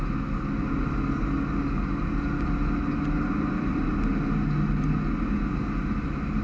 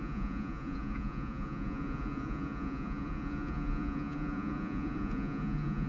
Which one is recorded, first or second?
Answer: first